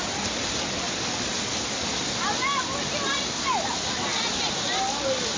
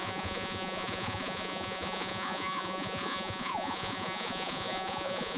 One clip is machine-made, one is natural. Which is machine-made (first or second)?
second